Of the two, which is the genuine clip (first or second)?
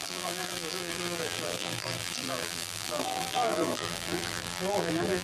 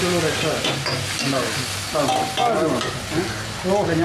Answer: second